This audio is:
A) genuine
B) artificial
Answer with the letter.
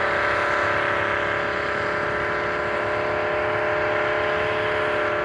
A